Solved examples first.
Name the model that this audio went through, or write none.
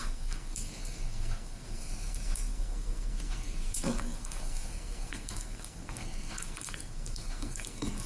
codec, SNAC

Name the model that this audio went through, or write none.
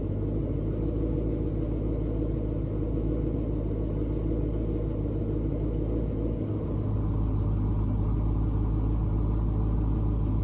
none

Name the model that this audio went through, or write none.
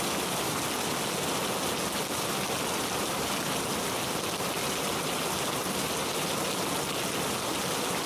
none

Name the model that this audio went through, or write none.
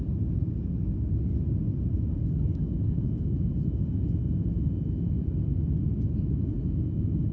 none